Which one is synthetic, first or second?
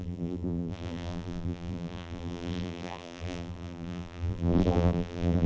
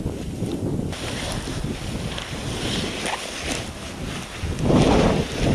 first